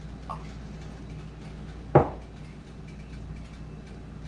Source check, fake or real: real